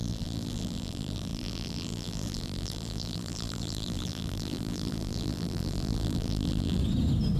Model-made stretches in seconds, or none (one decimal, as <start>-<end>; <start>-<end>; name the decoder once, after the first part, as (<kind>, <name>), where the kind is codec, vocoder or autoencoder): 0.0-6.8 (vocoder, BigVGAN v2)